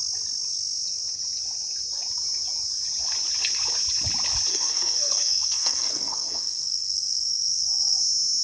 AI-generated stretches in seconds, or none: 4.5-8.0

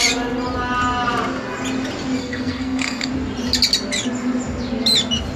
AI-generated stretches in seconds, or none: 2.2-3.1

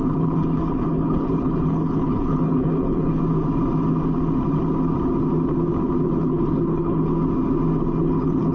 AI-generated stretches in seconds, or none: 0.0-3.2; 6.2-7.1; 8.0-8.5

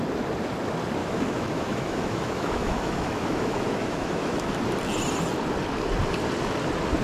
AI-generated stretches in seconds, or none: 1.0-4.6

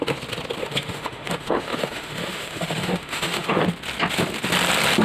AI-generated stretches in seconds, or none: 0.6-3.6

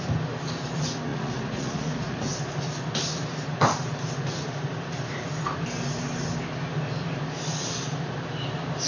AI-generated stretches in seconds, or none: 1.1-2.2